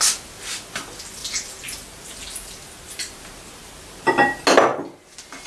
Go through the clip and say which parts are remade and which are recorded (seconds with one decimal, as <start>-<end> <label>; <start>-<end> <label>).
0.0-5.5 recorded